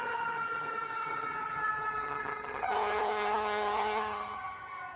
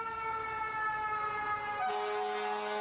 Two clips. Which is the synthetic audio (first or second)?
first